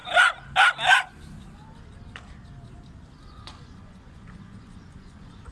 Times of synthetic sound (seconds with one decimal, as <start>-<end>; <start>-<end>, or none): 3.3-5.5